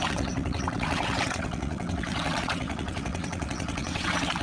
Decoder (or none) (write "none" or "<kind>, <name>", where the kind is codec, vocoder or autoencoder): vocoder, WaveNeXt